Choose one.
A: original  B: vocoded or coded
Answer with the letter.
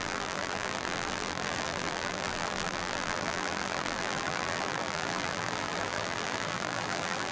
B